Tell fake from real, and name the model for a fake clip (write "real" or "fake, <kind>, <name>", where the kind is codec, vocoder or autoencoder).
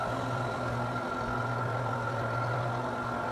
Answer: real